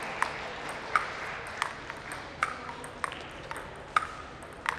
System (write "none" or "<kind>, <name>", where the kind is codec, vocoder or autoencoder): none